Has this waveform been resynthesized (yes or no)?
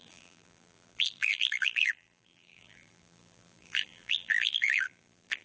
yes